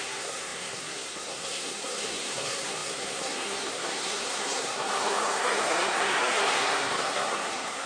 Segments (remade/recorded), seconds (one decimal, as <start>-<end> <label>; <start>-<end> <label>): 0.0-7.9 remade